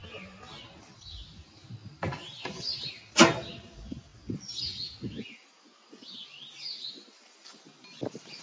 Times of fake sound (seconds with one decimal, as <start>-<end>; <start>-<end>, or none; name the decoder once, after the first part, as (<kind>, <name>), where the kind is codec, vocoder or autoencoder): 1.8-2.9 (vocoder, BigVGAN v2)